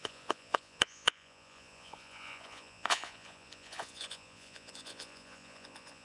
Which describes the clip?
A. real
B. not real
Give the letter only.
B